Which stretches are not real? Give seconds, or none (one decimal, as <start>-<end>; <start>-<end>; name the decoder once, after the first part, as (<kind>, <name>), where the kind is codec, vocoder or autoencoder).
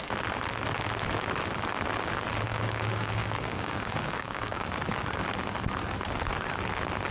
2.5-4.7 (codec, DAC)